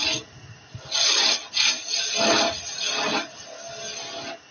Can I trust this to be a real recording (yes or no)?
yes